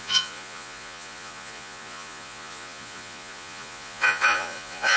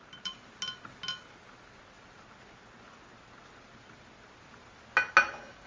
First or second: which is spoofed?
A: first